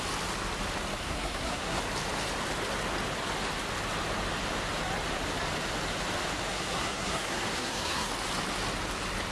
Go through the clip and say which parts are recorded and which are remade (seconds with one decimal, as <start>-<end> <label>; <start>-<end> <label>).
0.0-1.0 recorded; 1.0-1.8 remade; 1.8-6.5 recorded; 6.5-8.1 remade; 8.1-9.3 recorded